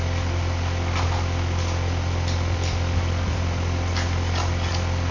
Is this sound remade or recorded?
recorded